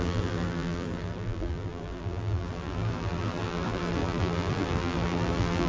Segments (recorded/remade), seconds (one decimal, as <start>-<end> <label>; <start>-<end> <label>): 0.0-5.7 remade